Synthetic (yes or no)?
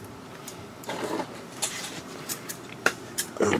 yes